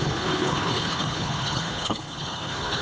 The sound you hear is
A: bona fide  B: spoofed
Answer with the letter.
B